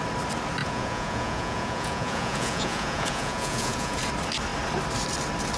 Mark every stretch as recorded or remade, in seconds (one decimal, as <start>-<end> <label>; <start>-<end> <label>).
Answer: 0.0-0.6 recorded; 0.6-4.0 remade; 4.0-5.6 recorded